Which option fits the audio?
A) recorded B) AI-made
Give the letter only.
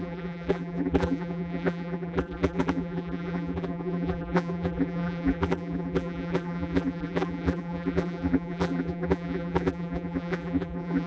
B